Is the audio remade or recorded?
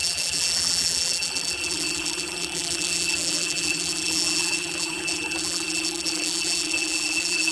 remade